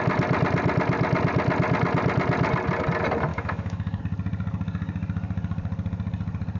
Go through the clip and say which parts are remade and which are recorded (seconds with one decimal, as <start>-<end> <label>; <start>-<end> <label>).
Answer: 0.0-3.3 recorded; 3.3-4.0 remade; 4.0-6.6 recorded